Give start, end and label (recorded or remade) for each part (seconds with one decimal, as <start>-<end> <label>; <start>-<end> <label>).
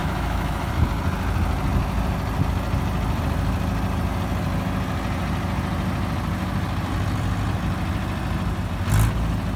0.0-0.7 remade; 0.7-9.6 recorded